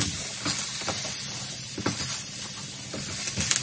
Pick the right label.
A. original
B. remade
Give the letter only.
A